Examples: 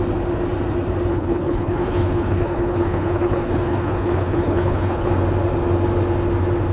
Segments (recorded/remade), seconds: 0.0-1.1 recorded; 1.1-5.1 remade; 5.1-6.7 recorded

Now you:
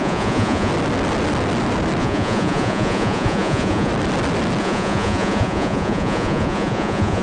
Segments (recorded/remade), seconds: 0.0-0.7 remade; 0.7-2.0 recorded; 2.0-3.9 remade; 3.9-4.6 recorded; 4.6-7.2 remade

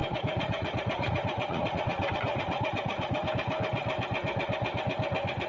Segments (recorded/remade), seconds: 0.0-3.3 remade; 3.3-5.5 recorded

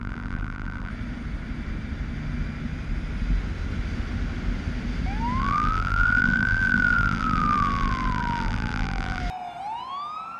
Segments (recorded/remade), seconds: 0.0-0.9 remade; 0.9-5.4 recorded; 5.4-9.2 remade; 9.2-10.4 recorded